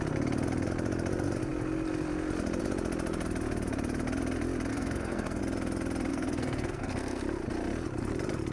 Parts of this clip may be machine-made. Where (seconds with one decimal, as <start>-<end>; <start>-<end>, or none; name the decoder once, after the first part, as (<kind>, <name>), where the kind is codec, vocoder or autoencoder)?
4.7-5.4 (codec, SNAC); 6.1-7.2